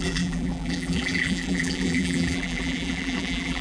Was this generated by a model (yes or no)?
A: yes